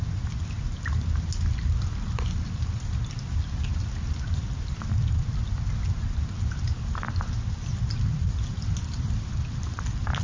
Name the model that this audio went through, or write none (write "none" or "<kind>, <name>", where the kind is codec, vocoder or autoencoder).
none